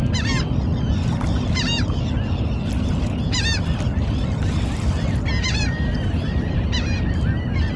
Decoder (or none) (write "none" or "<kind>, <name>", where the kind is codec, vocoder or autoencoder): none